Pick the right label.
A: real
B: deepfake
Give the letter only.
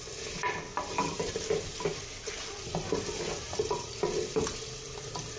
A